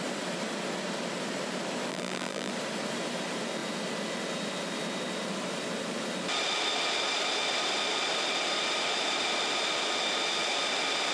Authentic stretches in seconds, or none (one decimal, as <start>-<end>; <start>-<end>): 0.0-1.9; 2.5-11.1